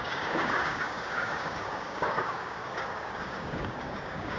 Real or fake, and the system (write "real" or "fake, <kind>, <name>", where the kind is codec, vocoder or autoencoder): fake, codec, DAC